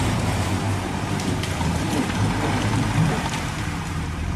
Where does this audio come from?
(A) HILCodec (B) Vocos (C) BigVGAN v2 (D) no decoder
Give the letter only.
C